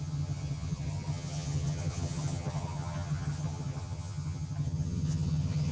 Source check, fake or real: fake